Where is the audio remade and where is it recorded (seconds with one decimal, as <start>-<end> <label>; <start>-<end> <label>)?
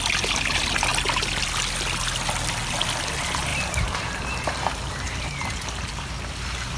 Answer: 0.0-3.5 recorded; 3.5-6.8 remade